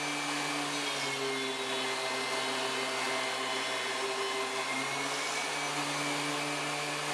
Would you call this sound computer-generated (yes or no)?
no